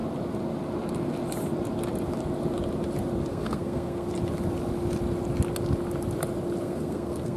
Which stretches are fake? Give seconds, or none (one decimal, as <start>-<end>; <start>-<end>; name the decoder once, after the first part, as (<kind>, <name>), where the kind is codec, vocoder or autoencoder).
3.3-4.1 (codec, SNAC); 6.6-7.4